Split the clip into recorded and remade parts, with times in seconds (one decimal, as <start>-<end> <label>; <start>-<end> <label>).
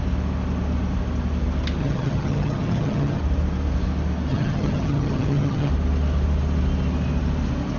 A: 0.0-1.8 recorded; 1.8-3.2 remade; 3.2-4.3 recorded; 4.3-5.7 remade; 5.7-7.8 recorded